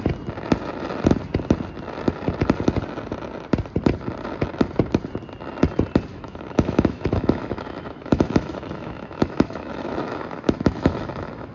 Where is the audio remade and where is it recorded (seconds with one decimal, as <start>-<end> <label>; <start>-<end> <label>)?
0.0-6.1 recorded; 6.1-11.5 remade